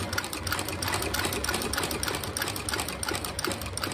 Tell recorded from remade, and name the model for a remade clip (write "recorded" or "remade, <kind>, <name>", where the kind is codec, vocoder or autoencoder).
recorded